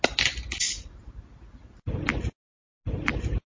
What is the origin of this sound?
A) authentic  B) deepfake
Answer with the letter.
A